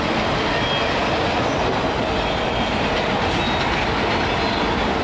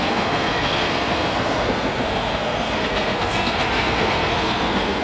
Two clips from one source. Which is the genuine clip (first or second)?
first